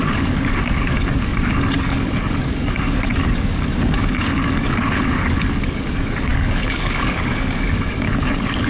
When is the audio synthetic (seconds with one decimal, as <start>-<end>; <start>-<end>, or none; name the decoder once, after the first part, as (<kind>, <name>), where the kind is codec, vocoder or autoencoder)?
0.0-1.3 (codec, DAC); 1.8-8.7